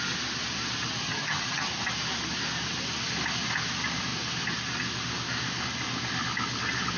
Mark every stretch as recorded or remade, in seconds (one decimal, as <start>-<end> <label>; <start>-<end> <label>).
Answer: 0.0-1.0 recorded; 1.0-1.7 remade; 1.7-7.0 recorded